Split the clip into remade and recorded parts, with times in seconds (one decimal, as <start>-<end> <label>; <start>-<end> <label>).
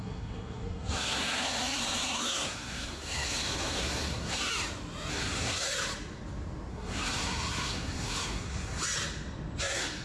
0.0-4.5 remade; 4.5-5.1 recorded; 5.1-5.7 remade; 5.7-6.7 recorded; 6.7-8.8 remade; 8.8-9.6 recorded; 9.6-10.0 remade